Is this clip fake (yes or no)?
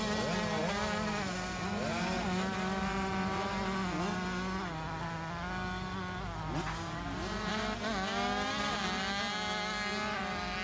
no